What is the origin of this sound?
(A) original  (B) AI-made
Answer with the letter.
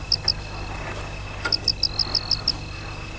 A